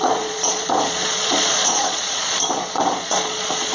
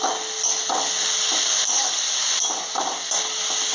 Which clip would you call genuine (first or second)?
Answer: second